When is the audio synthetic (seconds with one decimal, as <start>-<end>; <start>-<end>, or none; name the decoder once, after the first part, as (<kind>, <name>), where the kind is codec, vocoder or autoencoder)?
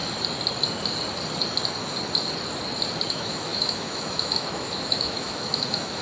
3.1-6.0 (autoencoder, DAC-VAE)